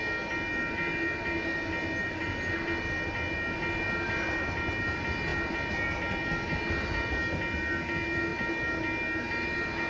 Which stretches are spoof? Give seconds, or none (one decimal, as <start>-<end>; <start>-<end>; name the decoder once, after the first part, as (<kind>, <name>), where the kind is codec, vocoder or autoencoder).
2.0-2.6 (vocoder, BigVGAN v2)